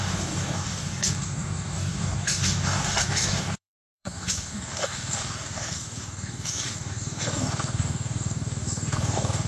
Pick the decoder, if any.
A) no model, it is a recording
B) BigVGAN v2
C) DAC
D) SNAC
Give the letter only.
C